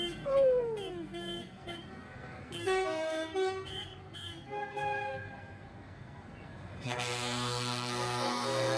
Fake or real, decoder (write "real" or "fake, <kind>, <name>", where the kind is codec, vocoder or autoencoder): fake, codec, SNAC